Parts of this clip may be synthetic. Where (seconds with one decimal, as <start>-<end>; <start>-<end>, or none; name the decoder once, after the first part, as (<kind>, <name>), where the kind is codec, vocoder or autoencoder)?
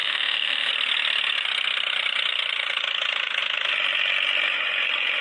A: 0.0-0.7 (autoencoder, DAC-VAE)